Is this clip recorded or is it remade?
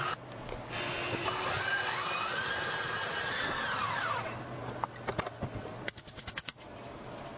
recorded